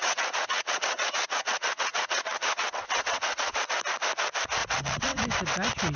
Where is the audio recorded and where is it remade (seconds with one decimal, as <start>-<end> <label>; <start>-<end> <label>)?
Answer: 0.0-3.6 remade; 3.6-4.6 recorded; 4.6-5.2 remade; 5.2-6.0 recorded